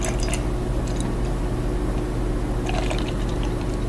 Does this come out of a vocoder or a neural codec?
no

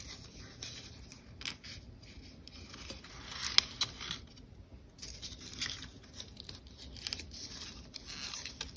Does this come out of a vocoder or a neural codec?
no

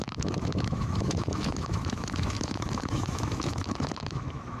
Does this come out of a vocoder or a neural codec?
yes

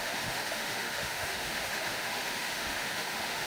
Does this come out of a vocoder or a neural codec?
yes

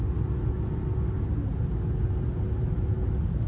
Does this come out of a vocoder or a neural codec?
no